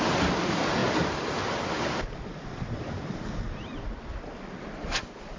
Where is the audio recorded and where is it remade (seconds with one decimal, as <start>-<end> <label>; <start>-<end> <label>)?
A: 0.0-5.4 recorded